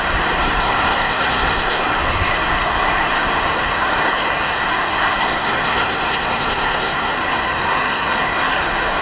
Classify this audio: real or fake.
fake